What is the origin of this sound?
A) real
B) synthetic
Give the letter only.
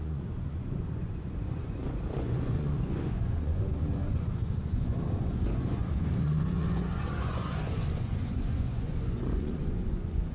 B